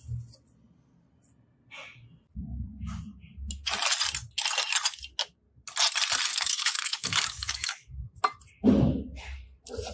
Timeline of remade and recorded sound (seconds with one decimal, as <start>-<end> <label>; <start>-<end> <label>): 0.0-6.3 recorded; 6.3-8.2 remade; 8.2-9.9 recorded